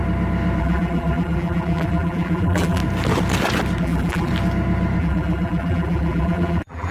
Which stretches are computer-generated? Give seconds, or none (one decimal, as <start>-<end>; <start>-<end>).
0.6-2.8; 3.8-4.3; 5.0-6.9